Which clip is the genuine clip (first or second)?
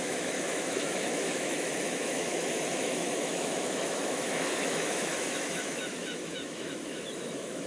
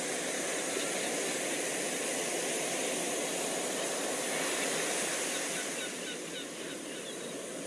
second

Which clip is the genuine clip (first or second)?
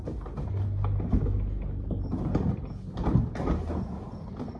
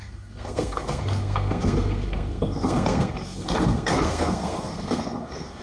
first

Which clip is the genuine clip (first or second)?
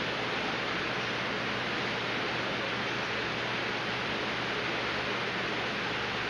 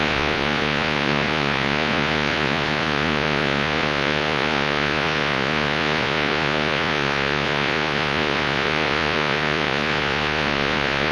first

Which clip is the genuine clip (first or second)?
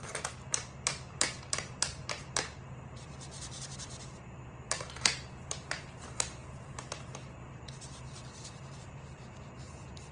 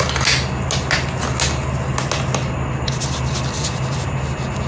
second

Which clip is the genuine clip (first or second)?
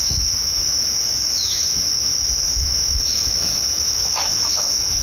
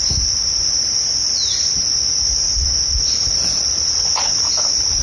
second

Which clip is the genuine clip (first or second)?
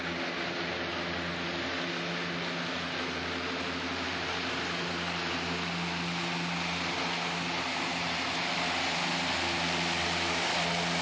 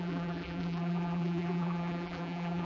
first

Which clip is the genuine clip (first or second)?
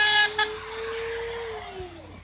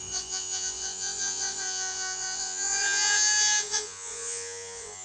first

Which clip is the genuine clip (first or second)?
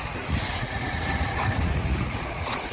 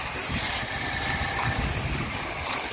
second